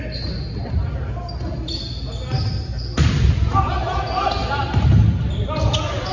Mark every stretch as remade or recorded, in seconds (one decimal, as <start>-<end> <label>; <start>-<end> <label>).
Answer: 0.0-6.1 recorded